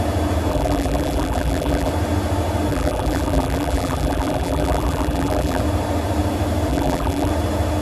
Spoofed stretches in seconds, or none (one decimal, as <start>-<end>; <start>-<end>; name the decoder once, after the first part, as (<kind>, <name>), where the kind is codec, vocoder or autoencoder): 0.5-1.9 (vocoder, BigVGAN v2); 2.7-5.6; 6.7-7.3